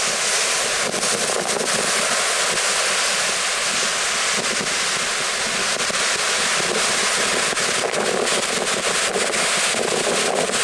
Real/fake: real